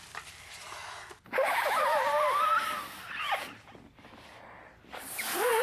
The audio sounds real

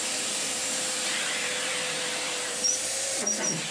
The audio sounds fake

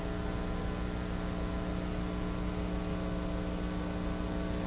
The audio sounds real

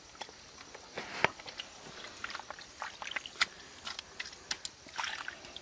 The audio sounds real